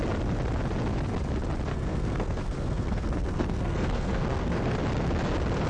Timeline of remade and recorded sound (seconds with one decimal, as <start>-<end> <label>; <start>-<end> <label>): 0.0-1.7 recorded; 1.7-4.7 remade; 4.7-5.7 recorded